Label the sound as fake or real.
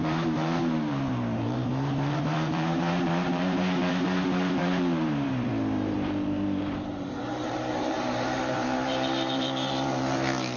fake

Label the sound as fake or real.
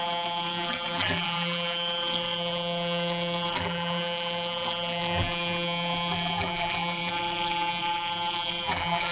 fake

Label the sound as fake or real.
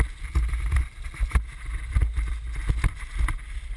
real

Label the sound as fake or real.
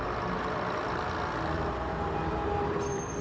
fake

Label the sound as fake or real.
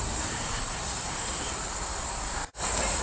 fake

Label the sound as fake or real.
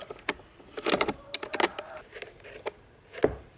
real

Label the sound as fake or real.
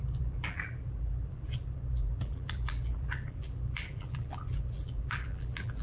fake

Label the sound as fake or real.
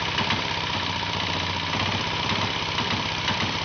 fake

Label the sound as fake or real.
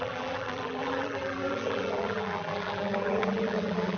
fake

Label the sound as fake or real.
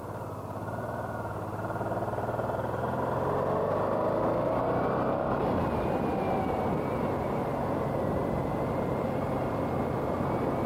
real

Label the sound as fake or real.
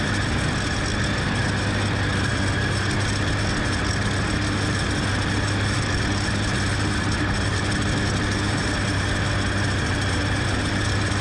real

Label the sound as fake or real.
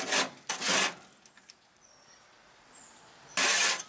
fake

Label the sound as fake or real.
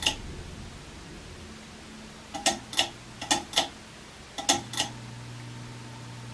real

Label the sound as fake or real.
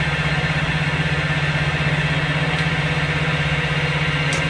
real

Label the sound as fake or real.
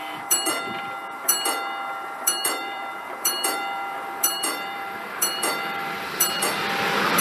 fake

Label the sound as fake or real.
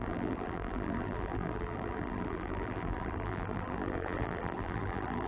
fake